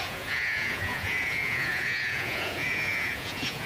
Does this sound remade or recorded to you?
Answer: remade